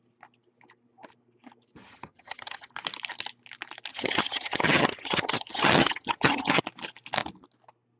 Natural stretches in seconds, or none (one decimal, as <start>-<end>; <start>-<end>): 0.0-1.8; 2.7-3.9; 6.6-8.0